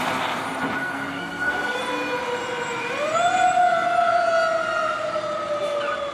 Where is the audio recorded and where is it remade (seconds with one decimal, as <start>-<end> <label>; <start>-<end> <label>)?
0.0-0.8 recorded; 0.8-1.8 remade; 1.8-6.1 recorded